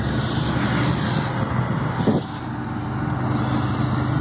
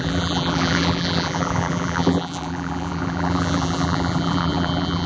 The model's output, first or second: second